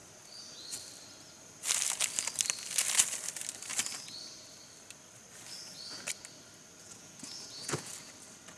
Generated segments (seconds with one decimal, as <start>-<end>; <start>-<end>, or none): 6.8-7.9